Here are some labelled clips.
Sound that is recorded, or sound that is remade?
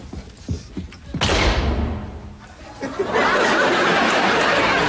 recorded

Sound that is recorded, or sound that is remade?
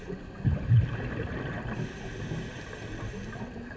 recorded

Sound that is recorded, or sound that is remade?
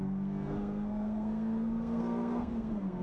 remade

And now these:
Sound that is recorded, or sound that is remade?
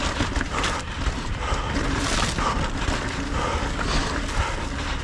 recorded